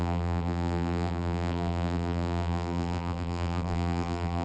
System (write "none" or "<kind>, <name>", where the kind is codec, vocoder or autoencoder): vocoder, BigVGAN v2